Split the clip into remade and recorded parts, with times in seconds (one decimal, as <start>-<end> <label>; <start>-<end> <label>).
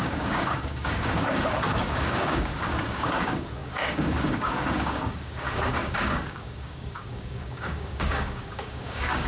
0.0-9.3 remade